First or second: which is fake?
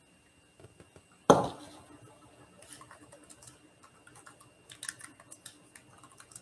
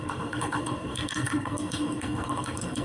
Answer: second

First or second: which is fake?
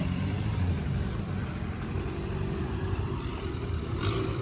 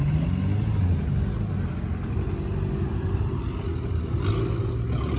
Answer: first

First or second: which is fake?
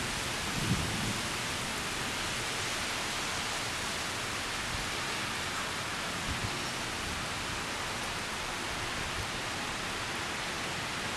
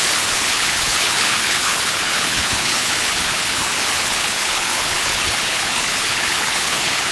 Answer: second